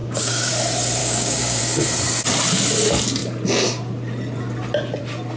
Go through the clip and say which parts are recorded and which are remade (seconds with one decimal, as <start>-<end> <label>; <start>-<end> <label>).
0.0-0.5 remade; 0.5-1.0 recorded; 1.0-1.6 remade; 1.6-5.4 recorded